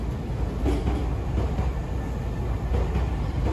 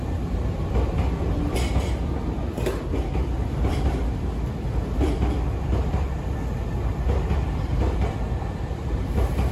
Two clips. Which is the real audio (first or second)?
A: first